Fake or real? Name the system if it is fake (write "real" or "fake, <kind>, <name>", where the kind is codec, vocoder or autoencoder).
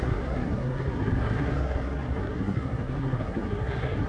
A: fake, codec, SNAC